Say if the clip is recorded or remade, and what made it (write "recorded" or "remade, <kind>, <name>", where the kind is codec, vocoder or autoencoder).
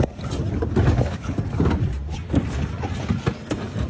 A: recorded